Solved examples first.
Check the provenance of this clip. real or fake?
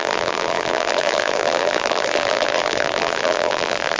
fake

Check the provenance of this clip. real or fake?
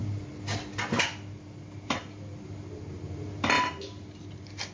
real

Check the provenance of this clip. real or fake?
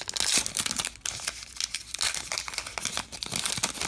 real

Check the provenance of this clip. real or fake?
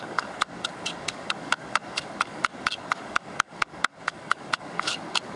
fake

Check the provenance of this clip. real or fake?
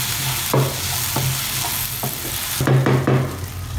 real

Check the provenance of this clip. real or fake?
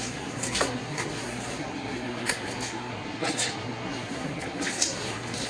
fake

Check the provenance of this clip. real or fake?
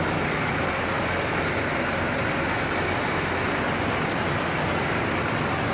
real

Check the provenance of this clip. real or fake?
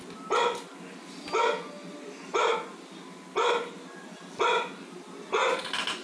real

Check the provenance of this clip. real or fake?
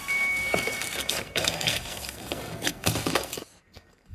fake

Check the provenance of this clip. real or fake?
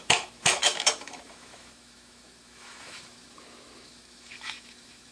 fake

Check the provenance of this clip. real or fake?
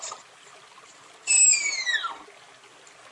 real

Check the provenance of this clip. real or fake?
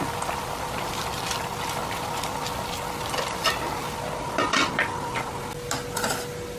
real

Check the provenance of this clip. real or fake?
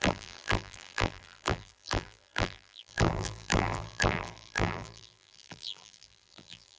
fake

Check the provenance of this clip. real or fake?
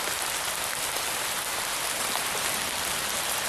real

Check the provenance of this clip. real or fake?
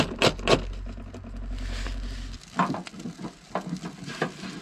real